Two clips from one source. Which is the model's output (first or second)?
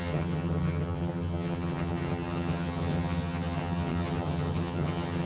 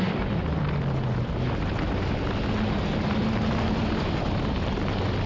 first